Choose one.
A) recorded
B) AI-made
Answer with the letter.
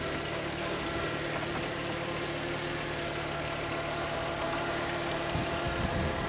A